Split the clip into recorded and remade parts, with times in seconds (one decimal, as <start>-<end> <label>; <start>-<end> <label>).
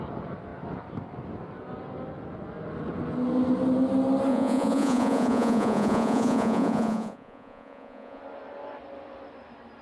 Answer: 0.0-4.3 recorded; 4.3-8.2 remade; 8.2-9.8 recorded